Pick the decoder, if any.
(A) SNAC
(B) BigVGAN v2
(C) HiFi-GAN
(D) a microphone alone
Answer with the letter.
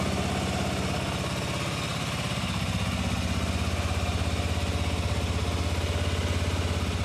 D